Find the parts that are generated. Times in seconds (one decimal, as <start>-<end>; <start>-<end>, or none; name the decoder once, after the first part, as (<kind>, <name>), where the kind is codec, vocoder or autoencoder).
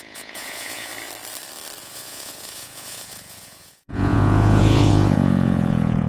0.0-0.9 (vocoder, Vocos); 1.8-6.1